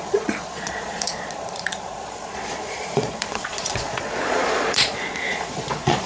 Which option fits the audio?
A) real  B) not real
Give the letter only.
B